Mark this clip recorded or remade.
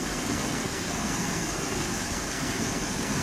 remade